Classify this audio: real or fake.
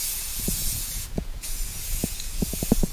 fake